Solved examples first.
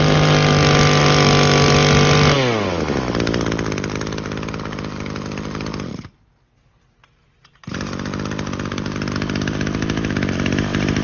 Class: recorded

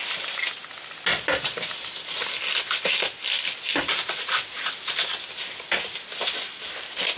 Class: recorded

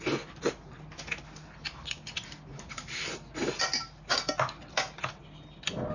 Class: recorded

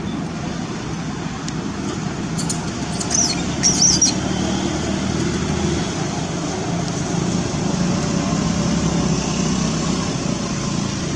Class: recorded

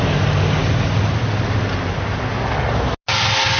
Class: recorded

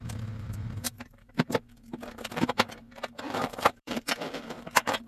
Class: remade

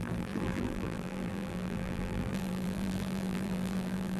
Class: remade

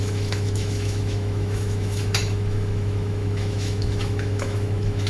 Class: remade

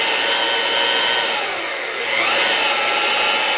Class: recorded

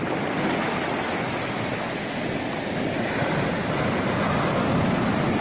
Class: recorded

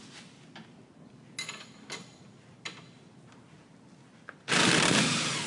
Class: recorded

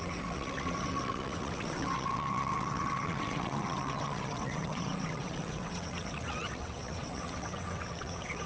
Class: remade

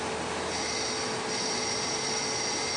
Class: recorded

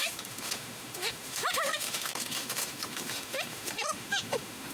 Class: remade